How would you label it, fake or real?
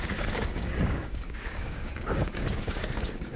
fake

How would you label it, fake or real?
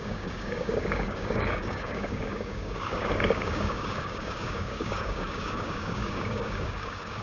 fake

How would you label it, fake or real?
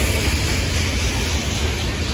real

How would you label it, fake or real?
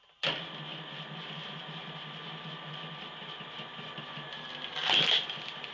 real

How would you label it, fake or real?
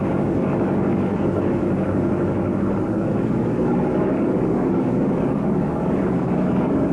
fake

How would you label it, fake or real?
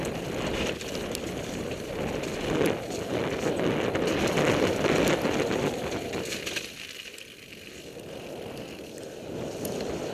real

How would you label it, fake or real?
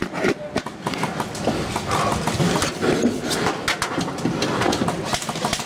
real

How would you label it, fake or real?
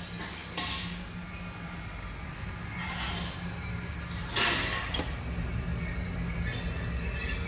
real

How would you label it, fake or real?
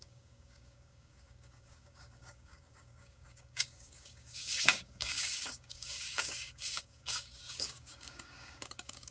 fake